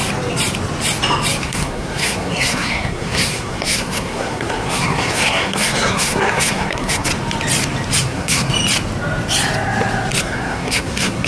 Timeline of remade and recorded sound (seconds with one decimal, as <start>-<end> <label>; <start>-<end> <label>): 0.0-1.4 recorded; 1.4-7.1 remade; 7.1-8.0 recorded; 8.0-8.5 remade; 8.5-10.2 recorded; 10.2-11.3 remade